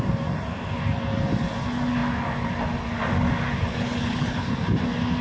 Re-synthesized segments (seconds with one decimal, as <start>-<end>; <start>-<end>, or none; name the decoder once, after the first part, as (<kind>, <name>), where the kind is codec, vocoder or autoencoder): 3.7-4.5 (codec, HILCodec)